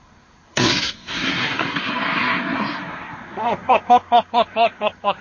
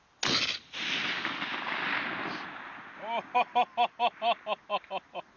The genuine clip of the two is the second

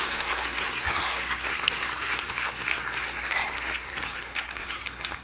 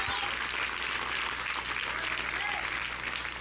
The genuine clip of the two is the second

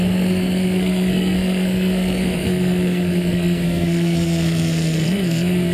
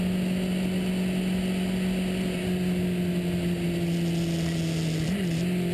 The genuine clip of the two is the second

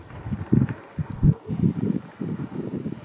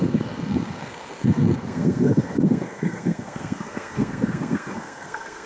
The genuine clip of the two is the first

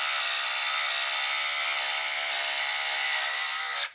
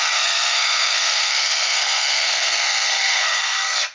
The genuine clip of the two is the first